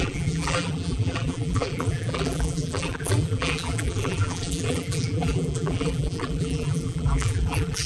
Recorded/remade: remade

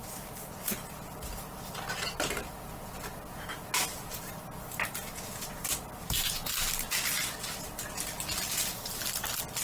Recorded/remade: recorded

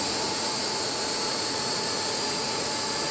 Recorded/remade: remade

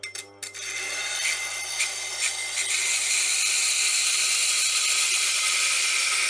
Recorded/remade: recorded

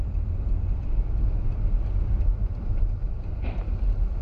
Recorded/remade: remade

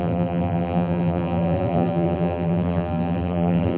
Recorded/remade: remade